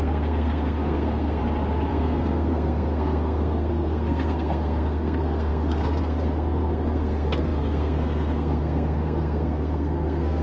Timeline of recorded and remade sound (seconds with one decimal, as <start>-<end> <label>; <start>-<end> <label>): 0.0-1.4 remade; 1.4-1.9 recorded; 1.9-10.4 remade